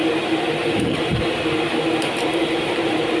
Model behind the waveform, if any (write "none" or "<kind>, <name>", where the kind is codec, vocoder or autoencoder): none